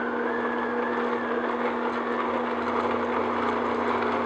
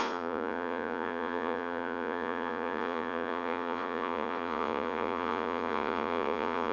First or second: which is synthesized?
second